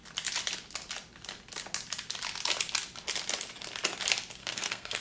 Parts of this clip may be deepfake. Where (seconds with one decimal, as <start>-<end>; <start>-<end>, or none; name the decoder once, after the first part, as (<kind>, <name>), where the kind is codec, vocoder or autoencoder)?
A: 4.4-5.0 (codec, SNAC)